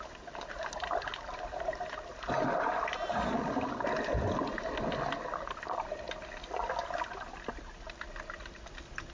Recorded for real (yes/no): yes